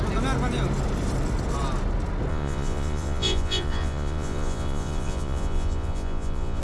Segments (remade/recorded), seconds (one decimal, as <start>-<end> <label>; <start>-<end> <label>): 0.0-2.3 recorded; 2.3-6.6 remade